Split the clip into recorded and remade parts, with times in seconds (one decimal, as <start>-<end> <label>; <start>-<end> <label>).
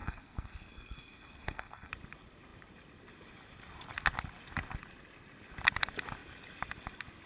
0.0-1.9 remade; 1.9-7.3 recorded